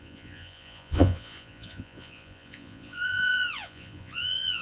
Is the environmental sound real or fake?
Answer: fake